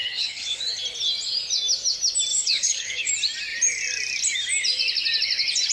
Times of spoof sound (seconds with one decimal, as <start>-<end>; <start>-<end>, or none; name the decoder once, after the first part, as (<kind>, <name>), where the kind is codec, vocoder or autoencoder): 0.0-0.6 (codec, HILCodec); 2.3-3.1